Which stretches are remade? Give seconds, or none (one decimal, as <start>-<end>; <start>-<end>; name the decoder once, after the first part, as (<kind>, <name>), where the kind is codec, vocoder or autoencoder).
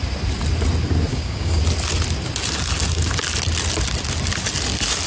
1.1-1.6 (codec, DAC)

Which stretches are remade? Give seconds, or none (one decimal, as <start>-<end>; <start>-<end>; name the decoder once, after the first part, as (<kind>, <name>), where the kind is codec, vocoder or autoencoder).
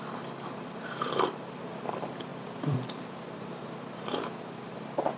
0.0-5.2 (vocoder, BigVGAN v2)